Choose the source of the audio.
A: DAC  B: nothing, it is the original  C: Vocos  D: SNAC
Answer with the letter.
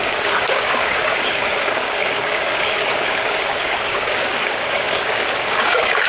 A